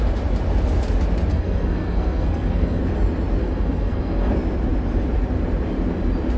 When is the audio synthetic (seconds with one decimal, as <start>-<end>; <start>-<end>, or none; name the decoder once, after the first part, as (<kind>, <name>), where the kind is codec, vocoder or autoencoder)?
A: 1.3-2.8 (codec, SNAC); 3.4-4.3